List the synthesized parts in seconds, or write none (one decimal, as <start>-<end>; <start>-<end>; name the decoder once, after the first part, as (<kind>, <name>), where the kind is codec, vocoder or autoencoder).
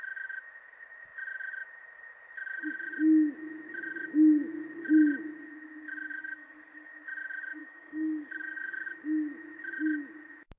6.2-6.9 (codec, DAC); 7.6-8.9